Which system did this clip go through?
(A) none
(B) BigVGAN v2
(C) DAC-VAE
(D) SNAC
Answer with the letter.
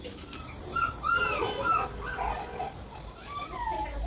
A